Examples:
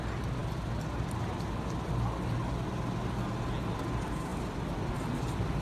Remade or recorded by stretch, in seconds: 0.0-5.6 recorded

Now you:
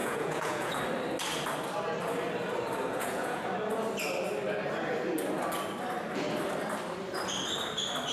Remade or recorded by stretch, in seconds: 0.0-0.8 remade; 0.8-2.9 recorded; 2.9-3.4 remade; 3.4-8.1 recorded